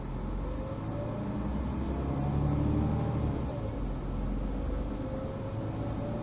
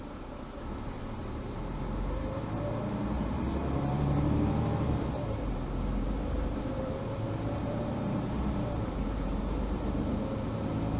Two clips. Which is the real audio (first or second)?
first